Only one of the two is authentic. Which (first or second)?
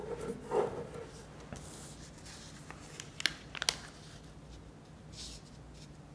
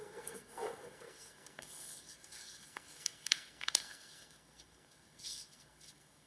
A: first